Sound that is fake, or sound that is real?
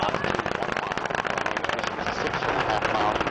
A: real